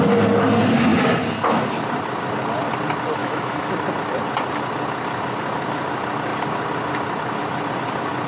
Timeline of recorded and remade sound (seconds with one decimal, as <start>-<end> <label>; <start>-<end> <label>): 0.0-3.2 recorded; 3.2-3.7 remade; 3.7-8.3 recorded